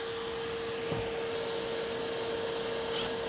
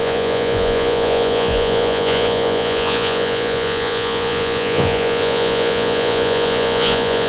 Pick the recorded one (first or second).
first